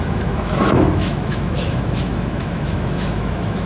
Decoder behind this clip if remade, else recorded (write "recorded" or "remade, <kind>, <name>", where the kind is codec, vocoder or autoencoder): remade, autoencoder, DAC-VAE